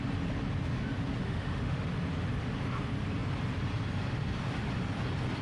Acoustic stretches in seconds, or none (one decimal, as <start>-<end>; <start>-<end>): 0.0-1.2; 1.9-5.4